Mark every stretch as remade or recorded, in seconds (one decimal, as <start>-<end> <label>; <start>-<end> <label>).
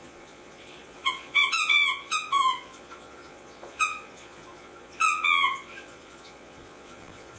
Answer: 0.0-7.4 remade